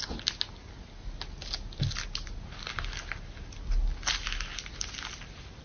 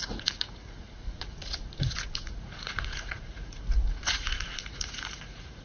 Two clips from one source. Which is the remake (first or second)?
second